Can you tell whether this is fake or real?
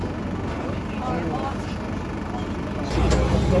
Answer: real